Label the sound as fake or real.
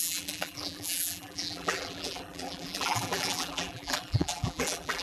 fake